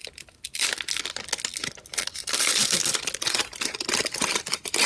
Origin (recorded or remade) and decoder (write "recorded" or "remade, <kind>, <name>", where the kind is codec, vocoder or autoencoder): recorded